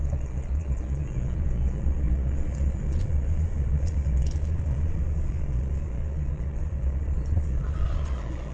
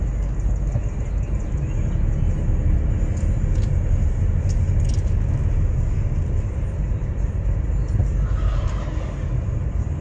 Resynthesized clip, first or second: first